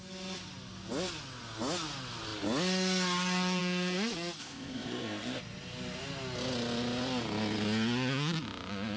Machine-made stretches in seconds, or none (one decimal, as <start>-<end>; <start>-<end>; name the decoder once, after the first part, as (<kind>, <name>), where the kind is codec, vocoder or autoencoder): 4.4-5.4 (codec, ZipCodec)